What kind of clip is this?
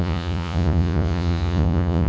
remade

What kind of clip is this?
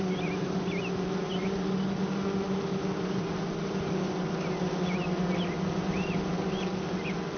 recorded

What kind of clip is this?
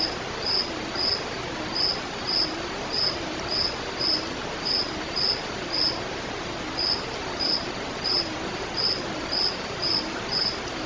recorded